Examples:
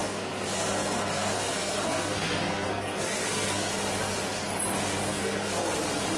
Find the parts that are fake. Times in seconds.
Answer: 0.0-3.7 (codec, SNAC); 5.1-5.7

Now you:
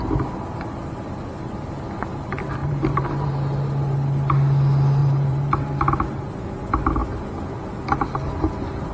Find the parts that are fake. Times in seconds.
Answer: 2.6-3.3 (vocoder, BigVGAN v2); 5.0-5.7

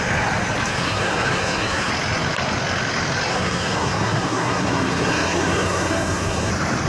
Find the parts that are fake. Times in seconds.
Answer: 0.7-1.9 (codec, SNAC); 3.3-6.5

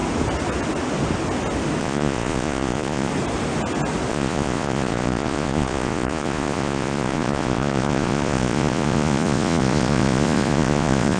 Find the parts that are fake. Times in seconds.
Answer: 1.8-3.1 (vocoder, Vocos); 4.1-11.2

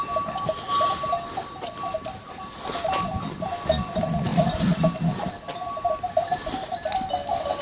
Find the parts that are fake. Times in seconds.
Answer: none

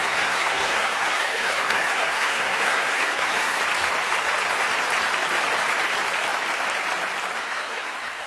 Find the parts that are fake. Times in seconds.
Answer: 0.0-3.6 (codec, SNAC); 7.4-8.3